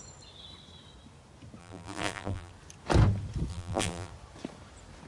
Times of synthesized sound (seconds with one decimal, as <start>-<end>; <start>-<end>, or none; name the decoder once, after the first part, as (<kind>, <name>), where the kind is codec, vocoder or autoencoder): 1.6-2.5 (vocoder, BigVGAN v2); 3.5-4.1